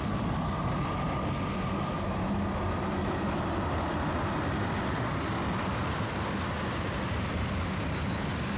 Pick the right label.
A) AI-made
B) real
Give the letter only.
B